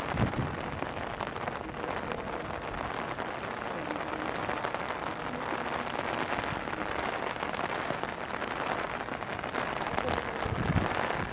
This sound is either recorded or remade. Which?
recorded